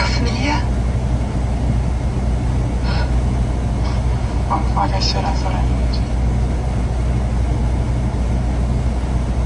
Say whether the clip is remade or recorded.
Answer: recorded